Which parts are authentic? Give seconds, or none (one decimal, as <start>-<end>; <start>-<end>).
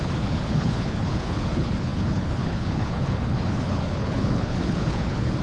none